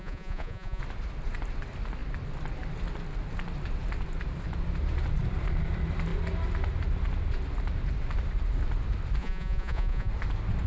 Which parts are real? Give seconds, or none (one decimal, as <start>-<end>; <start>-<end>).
0.8-9.2; 10.1-10.7